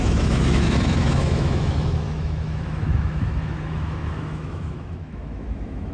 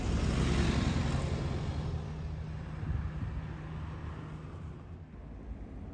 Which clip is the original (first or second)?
second